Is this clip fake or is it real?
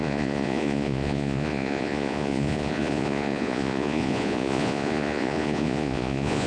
fake